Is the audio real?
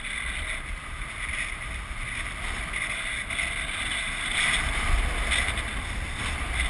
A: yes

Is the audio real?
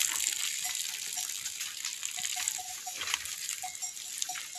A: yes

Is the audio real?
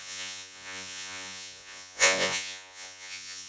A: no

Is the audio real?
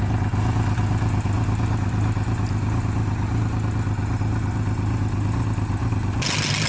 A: yes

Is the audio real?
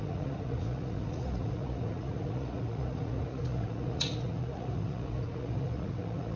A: no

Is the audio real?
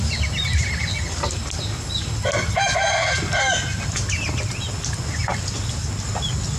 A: yes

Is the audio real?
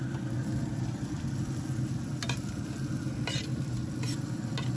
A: yes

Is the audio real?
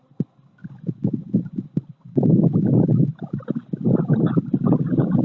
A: yes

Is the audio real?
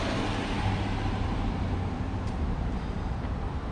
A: yes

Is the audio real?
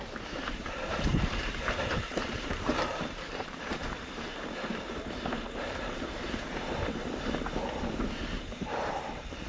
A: no